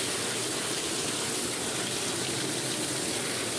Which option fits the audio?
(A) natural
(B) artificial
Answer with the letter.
B